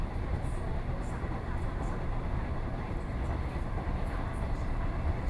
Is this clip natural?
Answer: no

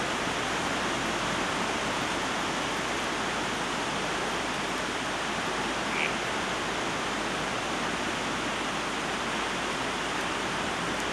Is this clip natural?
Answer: yes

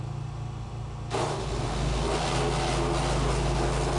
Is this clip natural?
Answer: yes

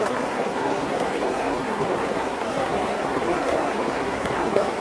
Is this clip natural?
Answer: no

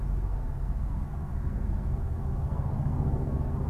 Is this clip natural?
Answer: no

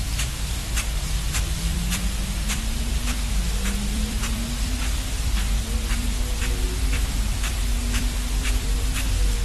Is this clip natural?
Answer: no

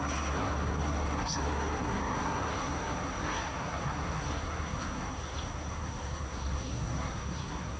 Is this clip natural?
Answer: no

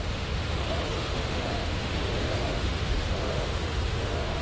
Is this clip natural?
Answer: no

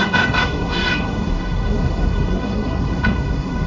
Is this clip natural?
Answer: no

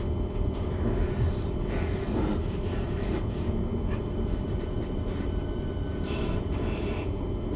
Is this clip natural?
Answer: no